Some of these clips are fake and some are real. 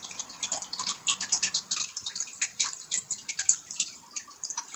real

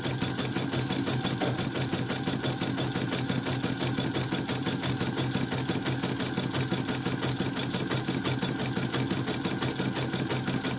real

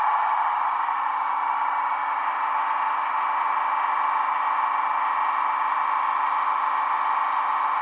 fake